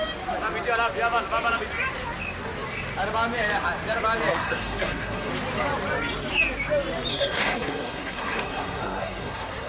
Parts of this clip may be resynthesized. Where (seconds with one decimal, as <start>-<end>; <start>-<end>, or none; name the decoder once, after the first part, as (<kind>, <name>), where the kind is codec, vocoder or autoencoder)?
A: 4.3-5.3 (codec, SNAC); 7.1-9.7